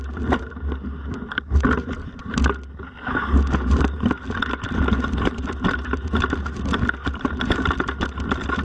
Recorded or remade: recorded